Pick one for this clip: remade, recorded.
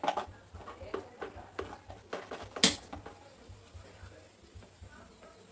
recorded